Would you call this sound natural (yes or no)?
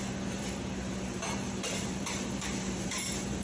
no